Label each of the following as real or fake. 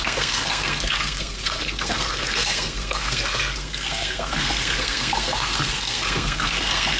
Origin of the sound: fake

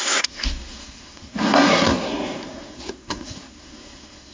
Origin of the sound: fake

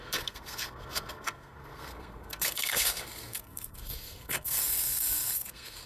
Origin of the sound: fake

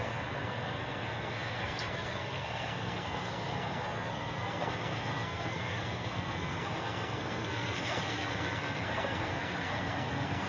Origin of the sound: fake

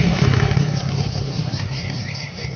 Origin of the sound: fake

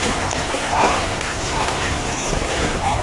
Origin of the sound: fake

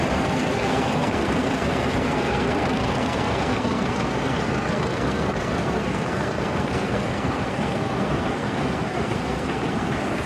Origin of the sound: fake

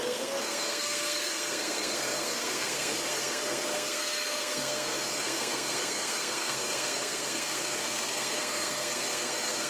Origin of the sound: fake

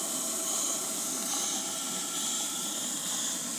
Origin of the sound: real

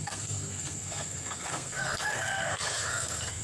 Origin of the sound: fake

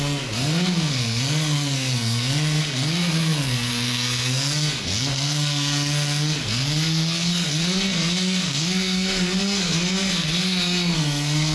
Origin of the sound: fake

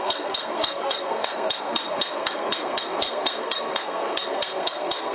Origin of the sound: fake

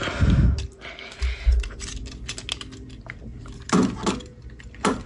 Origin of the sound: real